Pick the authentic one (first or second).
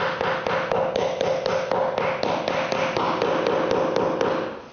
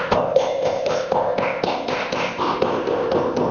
first